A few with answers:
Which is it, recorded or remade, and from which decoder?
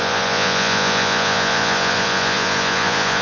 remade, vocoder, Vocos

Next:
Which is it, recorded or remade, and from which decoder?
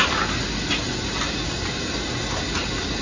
recorded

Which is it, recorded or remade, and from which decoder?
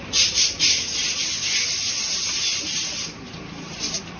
recorded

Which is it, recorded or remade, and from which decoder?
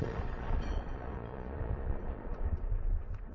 remade, vocoder, Vocos